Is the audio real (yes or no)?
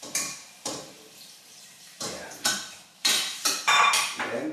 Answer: no